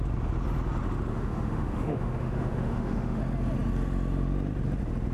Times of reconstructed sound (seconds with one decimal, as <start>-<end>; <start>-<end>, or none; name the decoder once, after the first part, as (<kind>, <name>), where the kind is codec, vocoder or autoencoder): 1.1-3.2 (autoencoder, DAC-VAE)